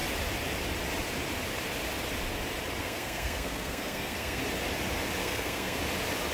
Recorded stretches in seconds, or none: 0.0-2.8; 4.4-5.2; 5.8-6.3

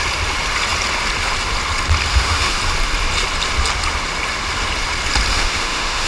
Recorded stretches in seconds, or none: 0.0-2.1; 2.6-5.3

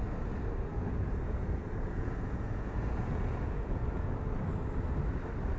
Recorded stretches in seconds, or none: 0.0-0.7; 4.1-5.6

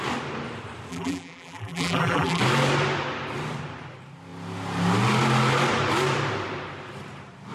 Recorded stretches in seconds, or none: 0.0-0.9; 2.4-7.5

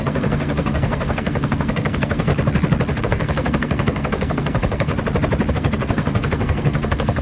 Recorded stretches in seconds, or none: 2.3-3.0; 4.9-5.5

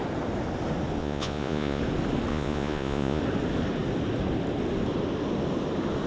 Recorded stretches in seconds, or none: 0.0-1.0; 1.8-2.3; 3.2-6.1

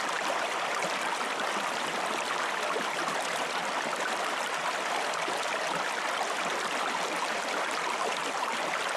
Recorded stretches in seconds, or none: 0.0-9.0

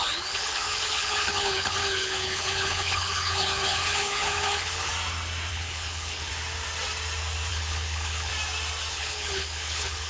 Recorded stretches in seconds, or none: 4.9-5.5; 6.3-7.5; 8.3-8.9